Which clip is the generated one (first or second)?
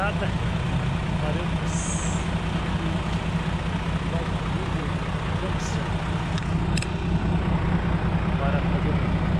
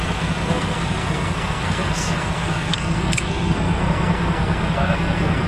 second